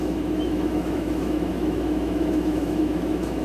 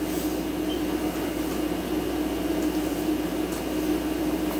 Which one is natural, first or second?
second